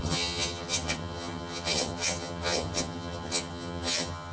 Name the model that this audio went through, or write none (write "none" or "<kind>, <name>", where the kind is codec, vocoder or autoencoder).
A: vocoder, HiFi-GAN